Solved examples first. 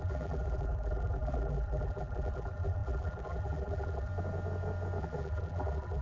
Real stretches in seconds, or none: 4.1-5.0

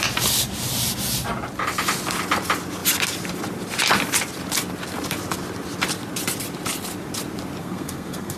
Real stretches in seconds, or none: 0.0-7.6

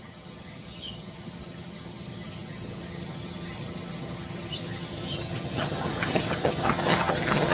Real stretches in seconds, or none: none

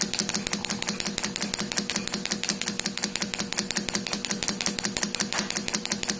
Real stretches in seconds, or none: 0.0-6.2

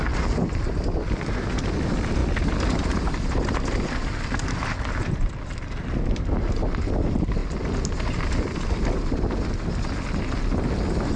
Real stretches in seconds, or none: 0.0-11.2

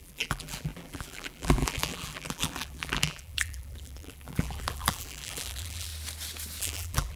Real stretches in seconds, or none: 5.9-6.6